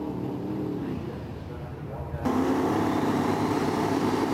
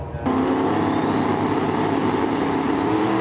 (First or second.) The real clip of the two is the second